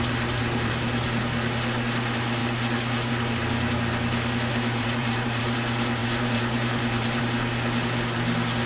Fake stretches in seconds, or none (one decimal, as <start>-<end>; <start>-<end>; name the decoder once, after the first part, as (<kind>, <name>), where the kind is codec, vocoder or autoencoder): 0.4-1.0 (vocoder, BigVGAN v2); 4.5-5.4; 6.0-7.2